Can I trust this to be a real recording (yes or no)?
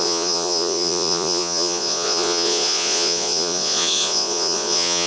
no